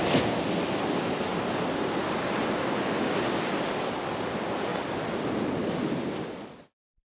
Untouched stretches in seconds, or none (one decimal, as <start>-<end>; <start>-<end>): 0.0-7.0